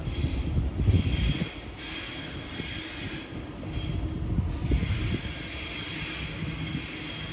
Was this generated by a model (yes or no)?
no